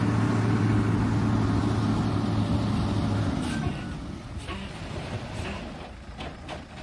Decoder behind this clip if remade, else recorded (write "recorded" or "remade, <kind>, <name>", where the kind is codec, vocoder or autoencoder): recorded